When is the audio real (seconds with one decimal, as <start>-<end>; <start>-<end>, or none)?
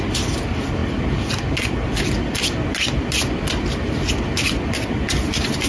0.0-5.7